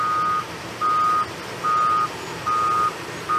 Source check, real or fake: real